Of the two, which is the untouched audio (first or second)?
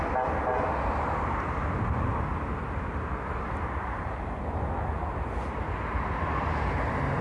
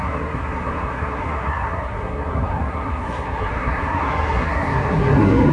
first